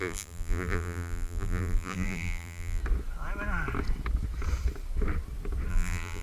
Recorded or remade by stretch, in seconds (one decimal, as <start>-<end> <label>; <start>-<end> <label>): 0.0-2.8 remade; 2.8-5.7 recorded; 5.7-6.2 remade